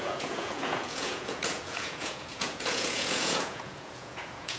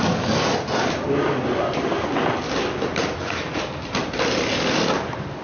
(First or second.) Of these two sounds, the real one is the second